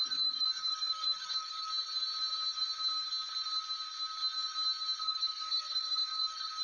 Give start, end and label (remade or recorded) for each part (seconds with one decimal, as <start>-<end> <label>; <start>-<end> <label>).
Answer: 0.0-1.7 remade; 1.7-5.0 recorded; 5.0-6.6 remade